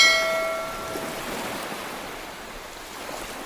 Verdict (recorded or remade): recorded